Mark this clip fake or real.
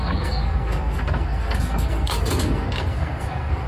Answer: fake